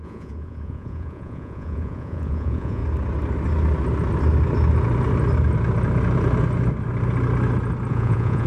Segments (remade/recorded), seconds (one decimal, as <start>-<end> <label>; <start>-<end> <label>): 0.0-2.8 remade; 2.8-7.9 recorded; 7.9-8.5 remade